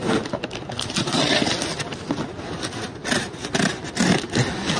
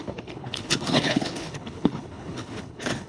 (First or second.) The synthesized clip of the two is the second